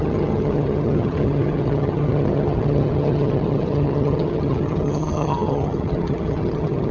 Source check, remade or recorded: remade